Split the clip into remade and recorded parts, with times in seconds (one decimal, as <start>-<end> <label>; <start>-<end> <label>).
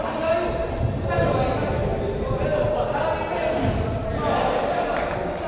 0.0-5.5 recorded